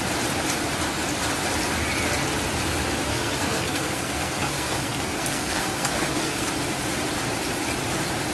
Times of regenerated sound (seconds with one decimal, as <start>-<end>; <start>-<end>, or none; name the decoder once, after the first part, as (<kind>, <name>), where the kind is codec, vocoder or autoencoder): 3.1-6.5 (codec, SNAC)